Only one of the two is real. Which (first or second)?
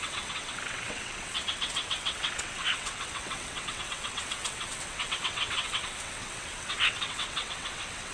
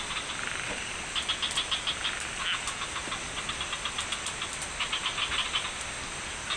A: second